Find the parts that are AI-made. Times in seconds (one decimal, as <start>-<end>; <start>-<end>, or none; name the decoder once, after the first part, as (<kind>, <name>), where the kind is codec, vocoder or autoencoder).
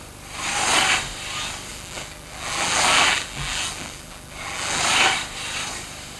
1.7-4.8 (vocoder, BigVGAN v2)